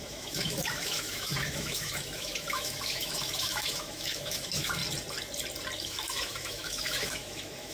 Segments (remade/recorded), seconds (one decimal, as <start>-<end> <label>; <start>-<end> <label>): 0.0-4.8 remade; 4.8-5.8 recorded; 5.8-7.7 remade